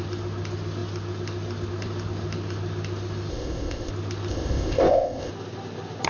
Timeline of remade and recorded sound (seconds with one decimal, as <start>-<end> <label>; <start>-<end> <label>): 0.0-3.3 recorded; 3.3-3.9 remade; 3.9-4.3 recorded; 4.3-5.3 remade; 5.3-6.1 recorded